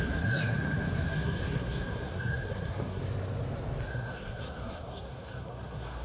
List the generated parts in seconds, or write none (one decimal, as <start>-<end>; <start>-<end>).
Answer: 0.0-3.0; 3.9-6.0